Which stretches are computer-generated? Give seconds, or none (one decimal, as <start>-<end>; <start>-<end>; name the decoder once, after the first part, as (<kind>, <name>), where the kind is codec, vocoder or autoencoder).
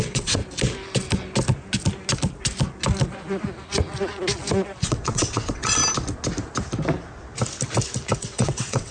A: 0.0-0.4 (vocoder, WaveNeXt); 4.8-5.8; 8.2-8.9